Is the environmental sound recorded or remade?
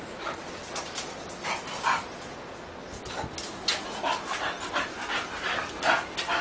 recorded